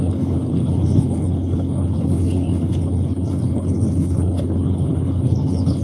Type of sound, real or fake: fake